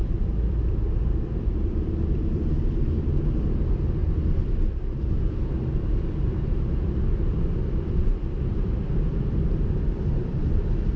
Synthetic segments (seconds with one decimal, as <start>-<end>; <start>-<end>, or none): 0.0-2.4; 4.0-5.4; 5.9-10.6